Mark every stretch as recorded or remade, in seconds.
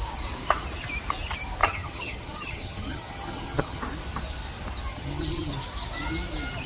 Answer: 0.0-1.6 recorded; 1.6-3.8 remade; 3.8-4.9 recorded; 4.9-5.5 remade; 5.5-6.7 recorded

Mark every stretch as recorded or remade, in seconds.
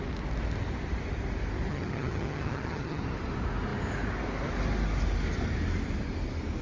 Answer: 0.0-1.7 recorded; 1.7-3.0 remade; 3.0-6.6 recorded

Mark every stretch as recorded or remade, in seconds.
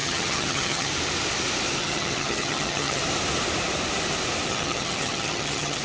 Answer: 0.0-0.9 remade; 0.9-1.8 recorded; 1.8-3.0 remade; 3.0-4.5 recorded; 4.5-5.8 remade